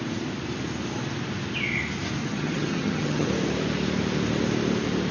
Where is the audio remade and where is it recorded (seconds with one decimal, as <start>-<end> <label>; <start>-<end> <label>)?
0.0-2.2 recorded; 2.2-3.3 remade; 3.3-5.1 recorded